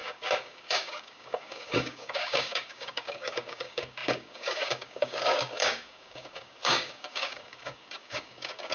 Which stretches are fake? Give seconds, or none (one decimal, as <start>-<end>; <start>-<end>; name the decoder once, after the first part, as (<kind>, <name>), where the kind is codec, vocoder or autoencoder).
0.0-8.7 (codec, DAC)

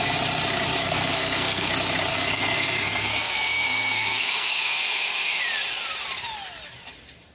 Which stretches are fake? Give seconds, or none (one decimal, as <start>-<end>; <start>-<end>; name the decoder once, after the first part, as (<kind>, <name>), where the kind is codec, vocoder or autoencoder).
0.8-1.7 (codec, SNAC); 2.1-5.4